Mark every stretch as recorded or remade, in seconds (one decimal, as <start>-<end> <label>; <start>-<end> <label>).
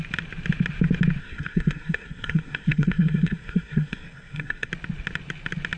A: 0.0-1.2 recorded; 1.2-4.7 remade; 4.7-5.8 recorded